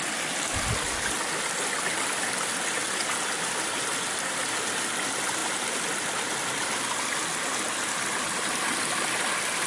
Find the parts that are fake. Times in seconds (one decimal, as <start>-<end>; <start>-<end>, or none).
none